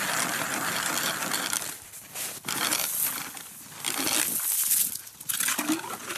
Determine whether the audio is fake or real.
real